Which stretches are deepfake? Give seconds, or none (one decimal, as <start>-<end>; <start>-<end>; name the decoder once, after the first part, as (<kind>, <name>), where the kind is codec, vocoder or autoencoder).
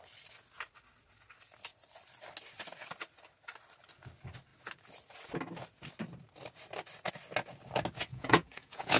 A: 8.1-9.0 (vocoder, Vocos)